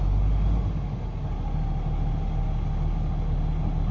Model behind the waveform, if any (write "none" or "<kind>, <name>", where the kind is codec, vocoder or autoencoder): none